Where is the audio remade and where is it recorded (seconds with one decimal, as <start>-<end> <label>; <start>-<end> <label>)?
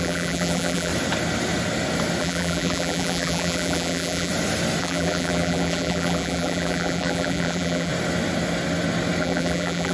0.0-0.9 remade; 0.9-2.2 recorded; 2.2-4.3 remade; 4.3-4.8 recorded; 4.8-7.9 remade; 7.9-9.2 recorded; 9.2-9.9 remade